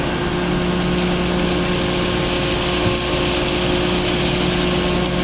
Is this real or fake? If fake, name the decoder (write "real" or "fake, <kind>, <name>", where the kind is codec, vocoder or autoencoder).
real